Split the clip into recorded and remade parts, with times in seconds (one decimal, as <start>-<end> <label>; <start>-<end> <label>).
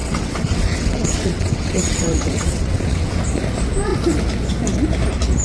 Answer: 0.0-3.2 remade; 3.2-5.4 recorded